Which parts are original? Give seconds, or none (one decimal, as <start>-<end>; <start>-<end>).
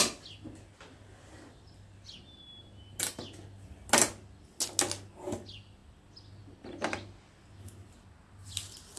0.0-9.0